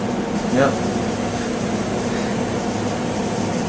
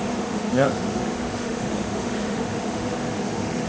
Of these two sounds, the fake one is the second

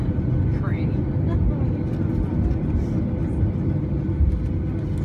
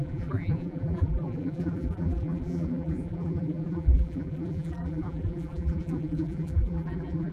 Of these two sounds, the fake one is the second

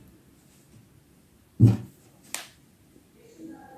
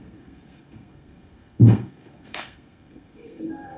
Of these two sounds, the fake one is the second